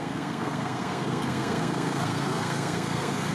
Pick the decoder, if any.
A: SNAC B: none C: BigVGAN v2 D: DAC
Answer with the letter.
A